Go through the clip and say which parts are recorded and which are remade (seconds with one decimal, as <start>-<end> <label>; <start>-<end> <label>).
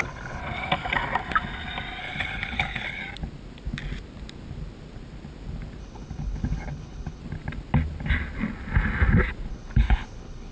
0.0-0.4 remade; 0.4-2.0 recorded; 2.0-3.0 remade; 3.0-5.8 recorded; 5.8-7.2 remade; 7.2-9.5 recorded; 9.5-10.5 remade